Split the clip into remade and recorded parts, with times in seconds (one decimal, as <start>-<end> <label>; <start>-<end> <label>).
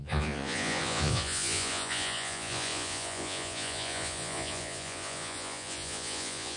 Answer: 0.0-6.6 remade